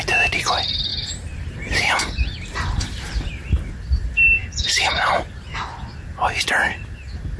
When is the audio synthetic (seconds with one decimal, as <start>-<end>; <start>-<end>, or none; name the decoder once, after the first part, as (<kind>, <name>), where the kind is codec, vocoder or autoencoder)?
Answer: 0.9-3.7 (vocoder, BigVGAN v2); 4.4-5.3